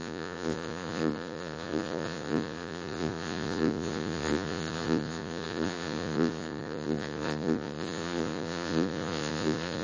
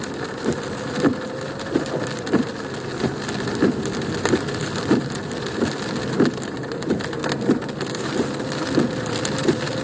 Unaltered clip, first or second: second